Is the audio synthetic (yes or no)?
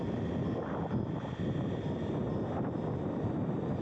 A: yes